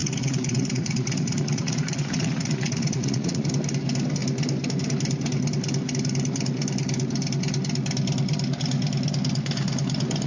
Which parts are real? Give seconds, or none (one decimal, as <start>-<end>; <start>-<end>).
3.5-10.3

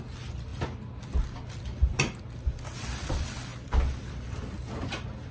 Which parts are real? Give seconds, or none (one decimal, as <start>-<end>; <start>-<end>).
0.0-5.3

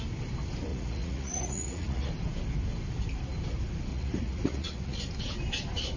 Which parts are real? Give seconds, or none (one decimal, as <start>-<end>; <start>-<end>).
0.0-0.7; 2.1-3.9; 5.0-6.0